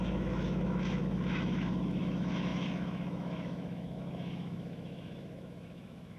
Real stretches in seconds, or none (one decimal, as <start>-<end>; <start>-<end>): none